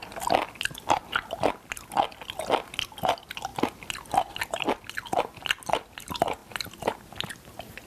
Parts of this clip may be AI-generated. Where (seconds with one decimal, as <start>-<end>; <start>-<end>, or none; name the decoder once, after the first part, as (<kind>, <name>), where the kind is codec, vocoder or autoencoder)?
none